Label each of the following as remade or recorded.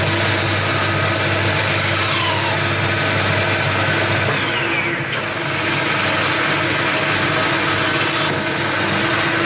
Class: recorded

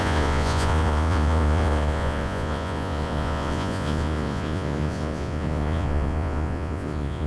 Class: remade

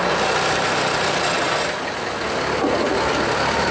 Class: recorded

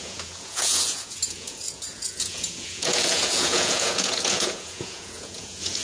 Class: remade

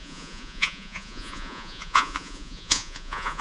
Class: remade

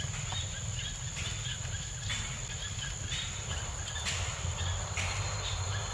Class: recorded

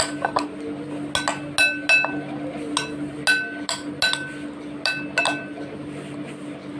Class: recorded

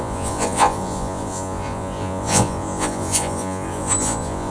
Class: remade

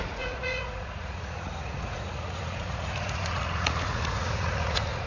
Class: remade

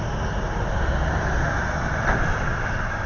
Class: recorded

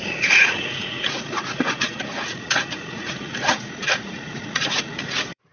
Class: remade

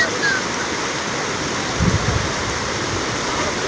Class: recorded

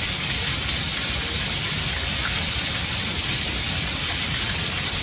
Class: recorded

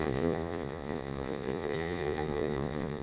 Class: remade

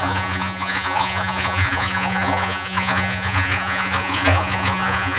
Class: remade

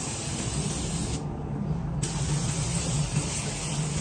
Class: recorded